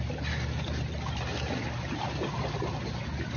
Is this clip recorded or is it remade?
recorded